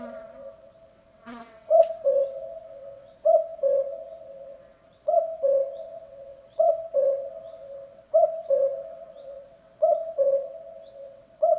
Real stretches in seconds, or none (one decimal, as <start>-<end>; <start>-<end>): none